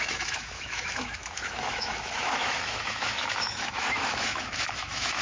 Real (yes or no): no